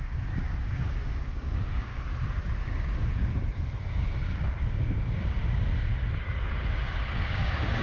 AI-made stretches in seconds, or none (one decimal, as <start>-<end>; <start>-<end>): 0.0-1.9; 2.7-3.2; 3.8-5.9; 6.5-7.8